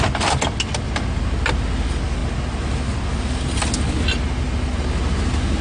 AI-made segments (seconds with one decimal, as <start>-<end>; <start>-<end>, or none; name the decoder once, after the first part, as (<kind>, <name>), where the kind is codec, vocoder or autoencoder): none